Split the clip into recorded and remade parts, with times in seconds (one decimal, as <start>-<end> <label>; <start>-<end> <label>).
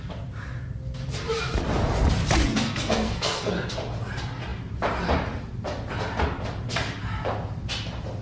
0.0-2.5 recorded; 2.5-3.5 remade; 3.5-8.2 recorded